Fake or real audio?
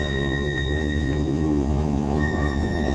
fake